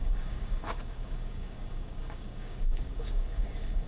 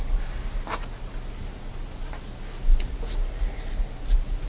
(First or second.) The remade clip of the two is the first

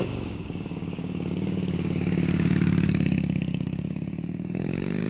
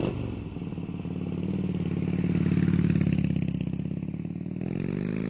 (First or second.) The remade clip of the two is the first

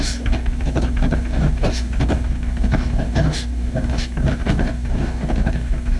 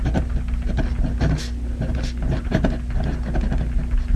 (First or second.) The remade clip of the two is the first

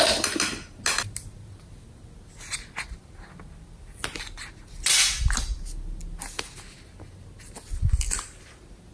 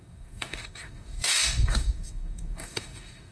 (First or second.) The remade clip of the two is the second